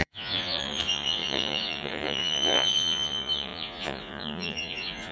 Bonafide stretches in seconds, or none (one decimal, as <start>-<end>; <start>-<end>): none